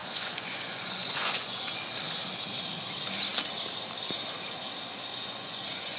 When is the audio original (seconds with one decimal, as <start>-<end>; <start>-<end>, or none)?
1.8-5.1